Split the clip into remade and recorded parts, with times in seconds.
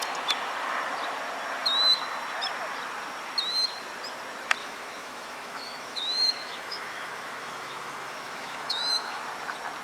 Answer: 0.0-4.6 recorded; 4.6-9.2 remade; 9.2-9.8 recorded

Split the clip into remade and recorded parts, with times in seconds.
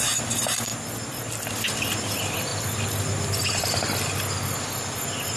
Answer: 0.0-5.4 recorded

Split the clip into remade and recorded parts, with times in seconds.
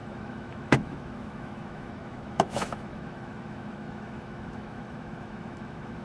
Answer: 0.0-6.0 remade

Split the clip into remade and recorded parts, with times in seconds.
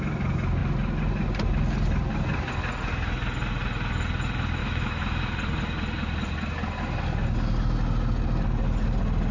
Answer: 0.0-4.6 recorded; 4.6-5.2 remade; 5.2-9.3 recorded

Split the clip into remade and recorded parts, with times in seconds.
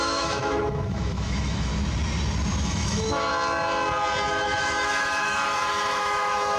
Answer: 0.0-1.7 remade; 1.7-2.6 recorded; 2.6-3.3 remade; 3.3-4.3 recorded; 4.3-6.6 remade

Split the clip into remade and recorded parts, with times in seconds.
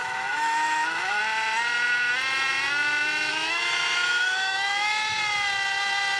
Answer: 0.0-1.2 remade; 1.2-3.3 recorded; 3.3-5.2 remade; 5.2-6.2 recorded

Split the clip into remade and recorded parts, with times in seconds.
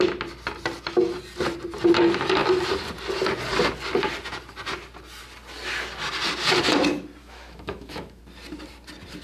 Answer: 0.0-7.2 recorded; 7.2-8.2 remade; 8.2-9.2 recorded